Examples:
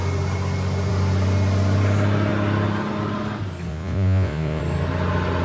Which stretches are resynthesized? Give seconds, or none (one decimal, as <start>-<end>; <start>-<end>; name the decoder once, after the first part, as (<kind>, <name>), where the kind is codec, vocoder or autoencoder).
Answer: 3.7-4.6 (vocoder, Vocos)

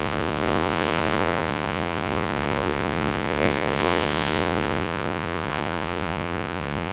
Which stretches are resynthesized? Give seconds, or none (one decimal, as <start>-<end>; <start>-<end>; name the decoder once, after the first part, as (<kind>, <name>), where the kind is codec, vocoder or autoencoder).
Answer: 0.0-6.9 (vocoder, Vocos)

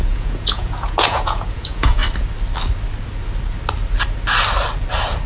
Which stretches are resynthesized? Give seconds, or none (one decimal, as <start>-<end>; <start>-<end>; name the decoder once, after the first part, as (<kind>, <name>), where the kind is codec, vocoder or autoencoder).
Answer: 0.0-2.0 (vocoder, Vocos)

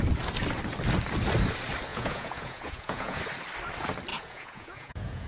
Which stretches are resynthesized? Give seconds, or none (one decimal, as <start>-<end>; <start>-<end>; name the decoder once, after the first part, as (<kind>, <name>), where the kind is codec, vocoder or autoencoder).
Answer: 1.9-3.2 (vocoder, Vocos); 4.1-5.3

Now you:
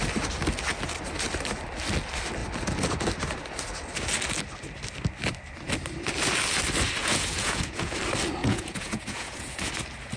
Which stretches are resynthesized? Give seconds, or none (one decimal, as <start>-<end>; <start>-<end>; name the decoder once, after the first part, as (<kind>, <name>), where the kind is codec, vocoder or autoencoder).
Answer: 7.0-8.0 (vocoder, Vocos); 8.4-9.7

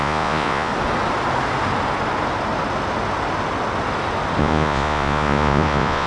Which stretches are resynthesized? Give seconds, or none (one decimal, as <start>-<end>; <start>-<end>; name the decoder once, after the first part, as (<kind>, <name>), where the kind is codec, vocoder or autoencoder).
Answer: 0.0-0.7 (vocoder, Vocos); 4.4-6.1

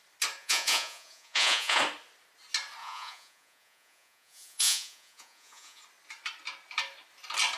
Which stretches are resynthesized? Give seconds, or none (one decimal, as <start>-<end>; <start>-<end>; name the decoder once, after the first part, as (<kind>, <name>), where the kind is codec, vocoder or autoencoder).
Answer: 0.4-1.8 (vocoder, Vocos); 2.8-5.8